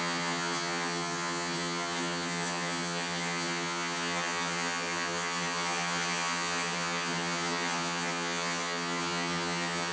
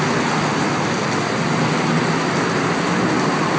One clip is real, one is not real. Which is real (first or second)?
second